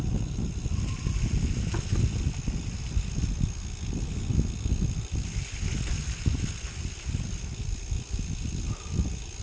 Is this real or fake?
real